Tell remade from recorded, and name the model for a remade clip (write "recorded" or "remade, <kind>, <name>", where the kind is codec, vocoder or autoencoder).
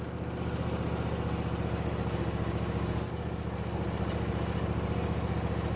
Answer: recorded